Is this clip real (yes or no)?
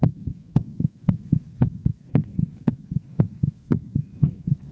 no